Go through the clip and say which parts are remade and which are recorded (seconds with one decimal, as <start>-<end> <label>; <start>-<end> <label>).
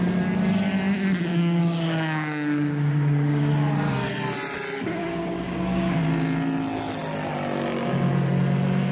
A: 0.0-1.3 recorded; 1.3-3.5 remade; 3.5-5.0 recorded; 5.0-6.0 remade; 6.0-8.9 recorded